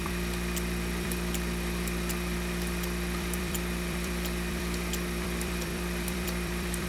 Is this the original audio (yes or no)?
no